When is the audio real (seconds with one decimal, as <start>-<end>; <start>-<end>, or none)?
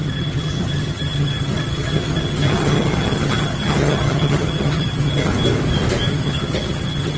5.3-6.1